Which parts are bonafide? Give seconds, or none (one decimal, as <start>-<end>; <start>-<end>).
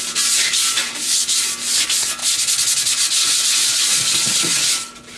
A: 0.0-5.2